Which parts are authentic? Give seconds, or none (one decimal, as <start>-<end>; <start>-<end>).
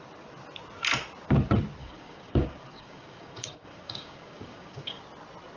0.0-1.8; 5.0-5.6